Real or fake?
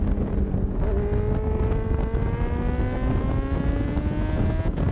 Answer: real